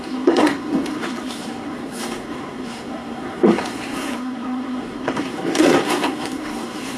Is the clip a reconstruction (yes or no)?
yes